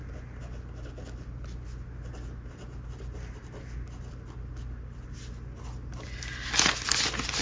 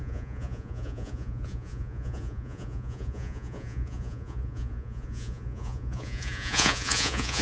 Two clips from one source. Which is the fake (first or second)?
second